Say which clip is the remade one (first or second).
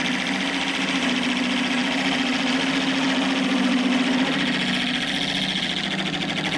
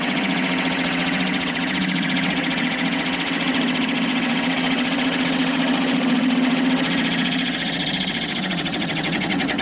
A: second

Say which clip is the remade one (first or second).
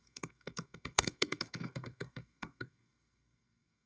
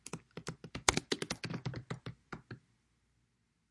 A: first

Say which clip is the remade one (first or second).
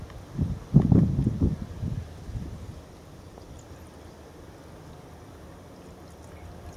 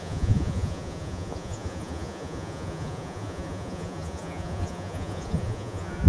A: second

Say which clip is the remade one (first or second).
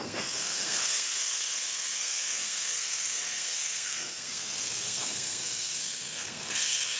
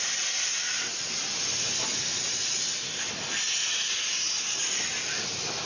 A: first